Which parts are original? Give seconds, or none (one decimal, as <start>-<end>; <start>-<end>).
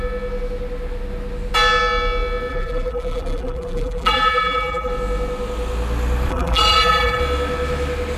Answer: 0.0-2.5; 4.9-6.3; 7.2-8.2